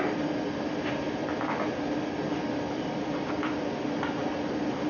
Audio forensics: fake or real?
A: real